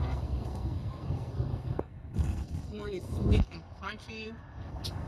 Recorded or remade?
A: remade